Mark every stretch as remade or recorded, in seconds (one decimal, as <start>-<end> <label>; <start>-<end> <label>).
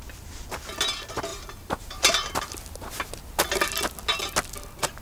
0.0-1.3 recorded; 1.3-3.1 remade; 3.1-5.0 recorded